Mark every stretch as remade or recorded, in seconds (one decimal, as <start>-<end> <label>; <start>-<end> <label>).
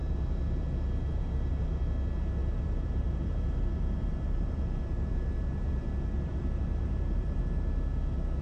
0.0-1.0 recorded; 1.0-1.8 remade; 1.8-2.4 recorded; 2.4-7.4 remade; 7.4-8.4 recorded